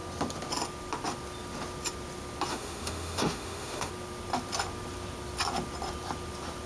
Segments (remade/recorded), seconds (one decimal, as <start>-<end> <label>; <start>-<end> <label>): 0.0-2.5 recorded; 2.5-3.9 remade; 3.9-6.7 recorded